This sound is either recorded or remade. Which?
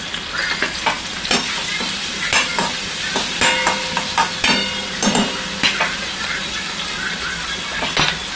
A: recorded